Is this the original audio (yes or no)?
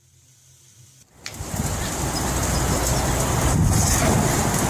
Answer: yes